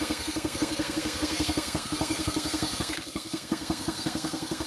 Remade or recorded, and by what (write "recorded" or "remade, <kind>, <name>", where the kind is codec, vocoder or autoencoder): remade, codec, SNAC